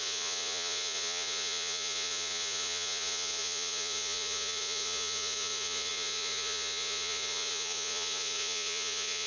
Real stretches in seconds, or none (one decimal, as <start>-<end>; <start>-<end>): none